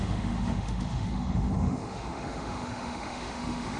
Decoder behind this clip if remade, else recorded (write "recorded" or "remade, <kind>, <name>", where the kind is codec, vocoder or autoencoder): remade, autoencoder, DAC-VAE